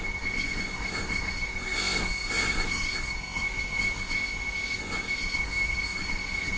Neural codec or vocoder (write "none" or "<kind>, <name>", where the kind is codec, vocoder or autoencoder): codec, SNAC